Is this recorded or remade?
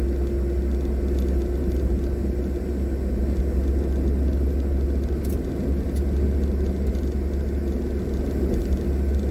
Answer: recorded